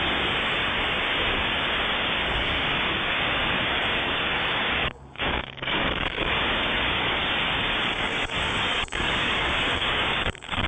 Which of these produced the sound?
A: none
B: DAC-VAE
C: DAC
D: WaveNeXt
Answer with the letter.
C